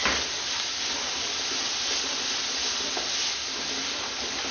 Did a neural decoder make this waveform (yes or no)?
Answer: no